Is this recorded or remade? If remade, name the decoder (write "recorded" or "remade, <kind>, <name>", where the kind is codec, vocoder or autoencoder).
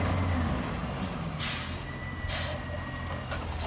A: recorded